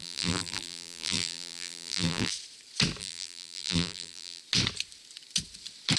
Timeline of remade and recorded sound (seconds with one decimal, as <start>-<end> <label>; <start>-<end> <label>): 0.0-2.3 remade; 2.3-3.0 recorded; 3.0-4.4 remade; 4.4-6.0 recorded